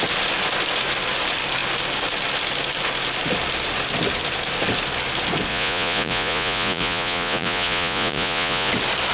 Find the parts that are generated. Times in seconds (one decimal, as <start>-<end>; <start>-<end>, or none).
5.5-8.7